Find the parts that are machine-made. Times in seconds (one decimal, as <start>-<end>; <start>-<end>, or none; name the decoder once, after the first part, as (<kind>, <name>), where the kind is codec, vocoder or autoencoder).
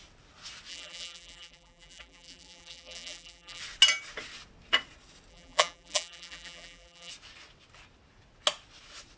0.7-3.6 (vocoder, BigVGAN v2); 5.3-7.1